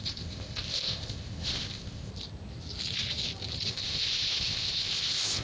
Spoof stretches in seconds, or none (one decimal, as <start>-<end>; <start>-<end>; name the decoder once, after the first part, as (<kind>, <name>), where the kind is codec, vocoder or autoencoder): 0.0-2.1 (codec, ZipCodec); 3.7-5.4